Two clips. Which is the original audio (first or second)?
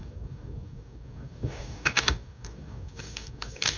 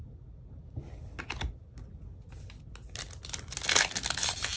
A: second